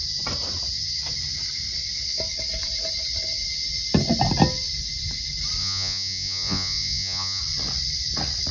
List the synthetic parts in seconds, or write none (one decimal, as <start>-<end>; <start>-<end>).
5.6-7.4